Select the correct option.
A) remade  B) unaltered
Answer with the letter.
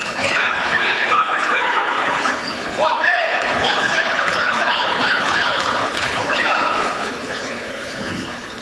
A